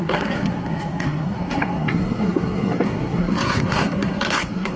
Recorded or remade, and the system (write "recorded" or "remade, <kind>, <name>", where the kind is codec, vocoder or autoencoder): remade, codec, SNAC